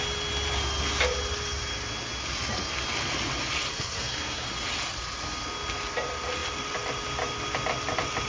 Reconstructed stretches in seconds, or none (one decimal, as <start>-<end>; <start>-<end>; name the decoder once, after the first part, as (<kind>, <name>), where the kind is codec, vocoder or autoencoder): 3.7-4.5 (codec, SNAC)